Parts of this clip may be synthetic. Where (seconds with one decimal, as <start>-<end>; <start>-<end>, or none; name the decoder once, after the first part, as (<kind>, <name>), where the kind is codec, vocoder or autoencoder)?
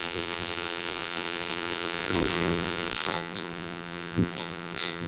0.0-5.1 (vocoder, BigVGAN v2)